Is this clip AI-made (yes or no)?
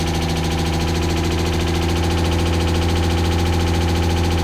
no